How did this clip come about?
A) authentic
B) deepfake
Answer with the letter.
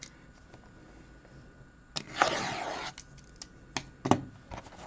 A